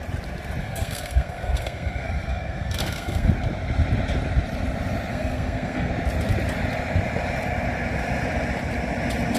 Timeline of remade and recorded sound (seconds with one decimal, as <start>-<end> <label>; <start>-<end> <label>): 0.0-0.6 recorded; 0.6-3.3 remade; 3.3-5.1 recorded; 5.1-5.9 remade; 5.9-9.4 recorded